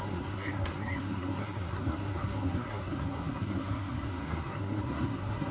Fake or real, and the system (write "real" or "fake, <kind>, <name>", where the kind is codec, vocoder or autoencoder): fake, codec, SNAC